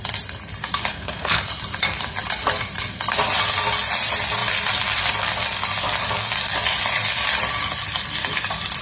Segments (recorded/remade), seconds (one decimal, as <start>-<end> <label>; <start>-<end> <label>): 0.0-0.9 recorded; 0.9-1.5 remade; 1.5-8.8 recorded